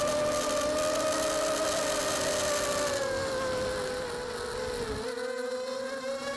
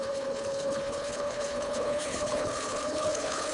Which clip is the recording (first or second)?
first